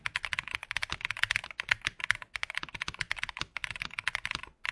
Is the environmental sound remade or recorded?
recorded